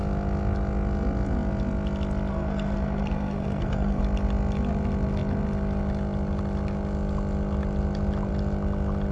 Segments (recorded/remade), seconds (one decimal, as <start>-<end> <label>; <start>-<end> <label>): 0.0-2.3 recorded; 2.3-4.0 remade; 4.0-9.1 recorded